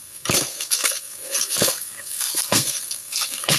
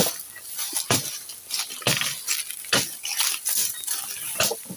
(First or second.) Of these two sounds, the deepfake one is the first